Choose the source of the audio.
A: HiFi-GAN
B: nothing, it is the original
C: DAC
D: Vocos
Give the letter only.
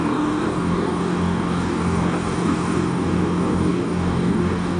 C